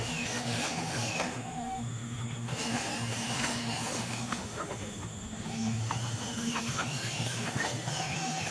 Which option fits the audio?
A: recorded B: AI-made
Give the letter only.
B